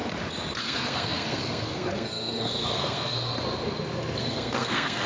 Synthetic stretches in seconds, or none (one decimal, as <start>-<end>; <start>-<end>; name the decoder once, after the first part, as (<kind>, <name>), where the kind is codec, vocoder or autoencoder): 0.6-3.3 (codec, SNAC); 4.2-5.1